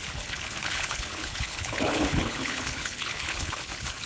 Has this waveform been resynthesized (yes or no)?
yes